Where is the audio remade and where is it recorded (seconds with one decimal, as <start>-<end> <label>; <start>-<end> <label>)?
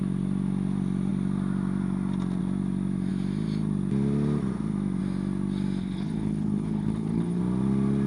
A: 0.0-5.8 recorded; 5.8-7.4 remade; 7.4-8.1 recorded